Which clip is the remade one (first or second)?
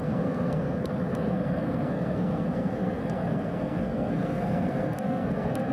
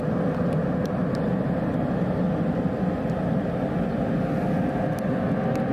first